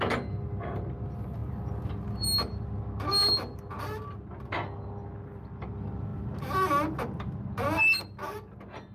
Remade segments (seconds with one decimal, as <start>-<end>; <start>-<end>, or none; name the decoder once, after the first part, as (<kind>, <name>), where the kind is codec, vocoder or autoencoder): none